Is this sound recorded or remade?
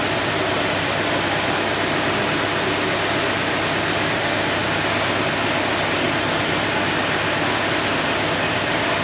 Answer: recorded